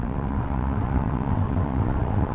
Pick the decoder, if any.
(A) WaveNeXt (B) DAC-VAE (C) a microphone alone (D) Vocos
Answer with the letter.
A